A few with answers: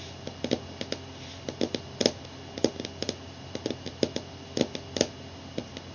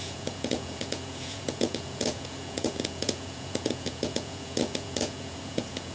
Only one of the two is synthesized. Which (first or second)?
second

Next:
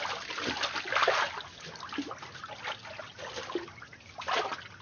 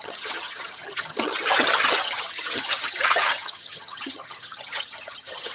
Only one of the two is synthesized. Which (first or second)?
second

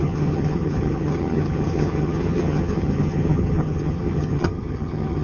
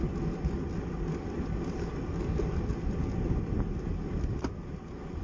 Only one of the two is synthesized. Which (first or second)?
first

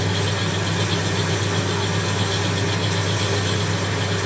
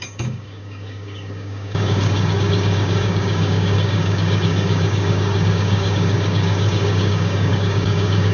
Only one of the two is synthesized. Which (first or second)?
second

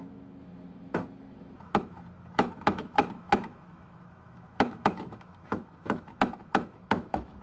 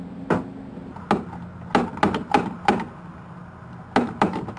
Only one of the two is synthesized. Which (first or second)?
first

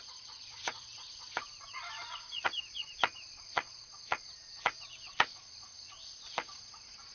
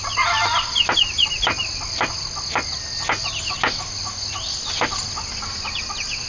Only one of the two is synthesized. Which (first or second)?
first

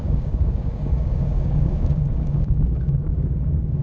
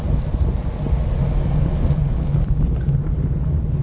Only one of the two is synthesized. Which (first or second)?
first